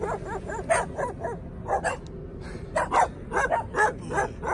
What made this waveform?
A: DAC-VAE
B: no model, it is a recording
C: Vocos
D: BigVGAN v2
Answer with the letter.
B